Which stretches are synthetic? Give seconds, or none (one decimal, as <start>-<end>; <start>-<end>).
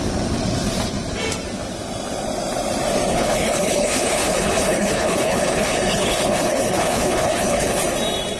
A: 3.1-7.8